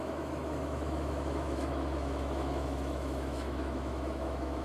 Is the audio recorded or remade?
remade